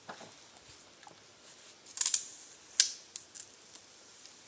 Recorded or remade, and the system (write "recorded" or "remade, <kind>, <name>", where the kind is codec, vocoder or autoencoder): recorded